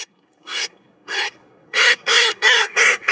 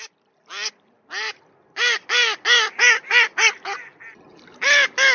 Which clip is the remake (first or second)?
first